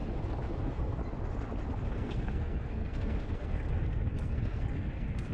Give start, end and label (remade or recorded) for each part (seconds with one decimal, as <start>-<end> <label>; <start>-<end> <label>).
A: 0.0-0.6 recorded; 0.6-1.0 remade; 1.0-1.9 recorded; 1.9-5.3 remade